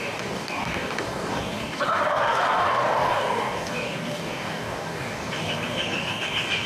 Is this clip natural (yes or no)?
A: no